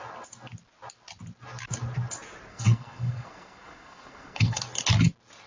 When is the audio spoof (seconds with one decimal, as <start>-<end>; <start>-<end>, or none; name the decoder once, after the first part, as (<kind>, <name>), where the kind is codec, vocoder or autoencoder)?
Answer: 2.5-4.6 (codec, SNAC)